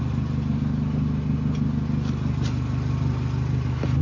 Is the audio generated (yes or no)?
no